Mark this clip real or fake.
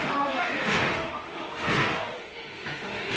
fake